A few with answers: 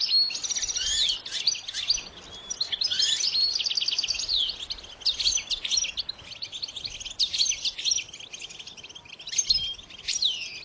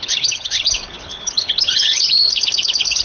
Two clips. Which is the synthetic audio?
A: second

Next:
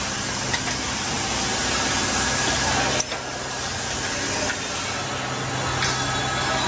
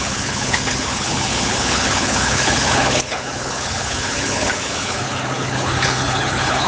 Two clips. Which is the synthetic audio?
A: second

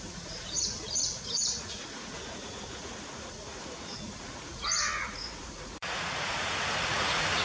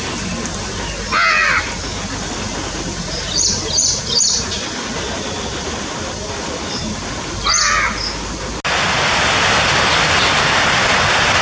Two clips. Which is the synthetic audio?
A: first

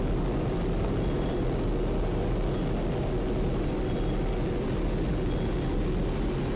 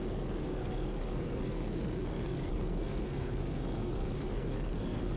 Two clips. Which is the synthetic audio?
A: second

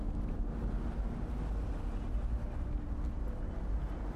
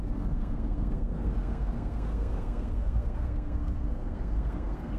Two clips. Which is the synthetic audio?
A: second